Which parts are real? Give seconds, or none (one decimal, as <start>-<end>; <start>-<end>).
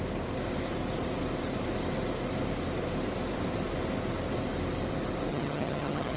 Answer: 0.0-5.3